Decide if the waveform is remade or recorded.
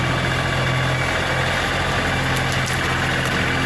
recorded